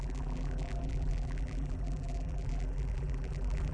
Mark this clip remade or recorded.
remade